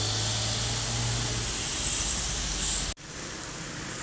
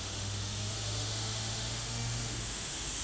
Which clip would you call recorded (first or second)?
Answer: first